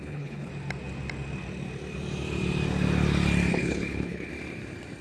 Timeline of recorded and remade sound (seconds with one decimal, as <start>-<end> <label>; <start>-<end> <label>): 0.0-0.5 remade; 0.5-3.5 recorded; 3.5-4.3 remade; 4.3-5.0 recorded